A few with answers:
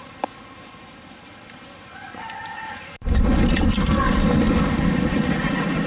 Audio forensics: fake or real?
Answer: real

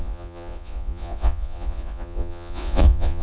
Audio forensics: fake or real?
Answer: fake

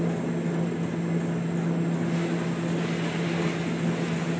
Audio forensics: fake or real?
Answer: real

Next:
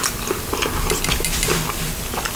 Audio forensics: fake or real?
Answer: real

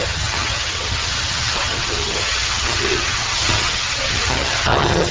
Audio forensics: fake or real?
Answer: fake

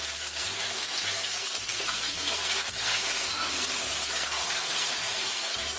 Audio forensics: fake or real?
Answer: fake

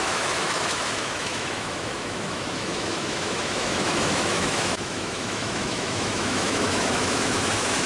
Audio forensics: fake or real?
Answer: fake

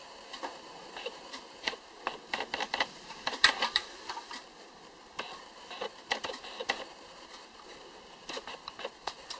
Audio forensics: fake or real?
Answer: fake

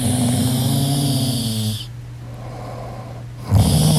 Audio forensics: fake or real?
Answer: real